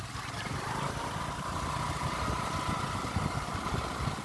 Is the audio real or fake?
real